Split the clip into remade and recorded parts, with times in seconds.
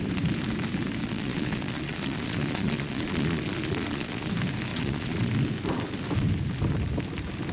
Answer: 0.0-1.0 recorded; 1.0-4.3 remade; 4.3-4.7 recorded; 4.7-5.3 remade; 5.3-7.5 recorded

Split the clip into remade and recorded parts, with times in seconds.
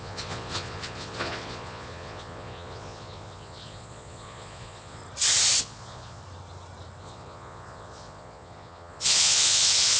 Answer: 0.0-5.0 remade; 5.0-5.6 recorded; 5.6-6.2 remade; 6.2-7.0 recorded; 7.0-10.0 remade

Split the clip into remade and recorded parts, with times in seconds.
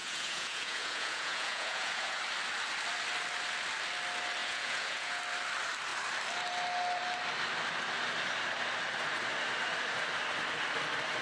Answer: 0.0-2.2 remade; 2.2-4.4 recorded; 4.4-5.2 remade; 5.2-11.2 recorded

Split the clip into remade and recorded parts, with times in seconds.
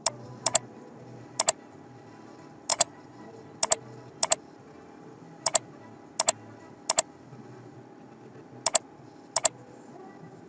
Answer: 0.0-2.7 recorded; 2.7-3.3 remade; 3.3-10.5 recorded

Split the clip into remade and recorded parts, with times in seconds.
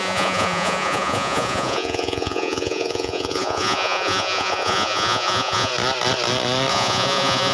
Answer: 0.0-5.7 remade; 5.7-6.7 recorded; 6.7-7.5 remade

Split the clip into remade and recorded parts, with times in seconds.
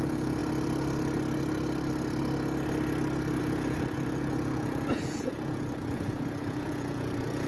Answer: 0.0-0.4 remade; 0.4-3.4 recorded; 3.4-7.5 remade